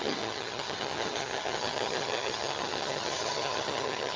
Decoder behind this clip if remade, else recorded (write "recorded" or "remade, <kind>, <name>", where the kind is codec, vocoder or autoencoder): remade, vocoder, HiFi-GAN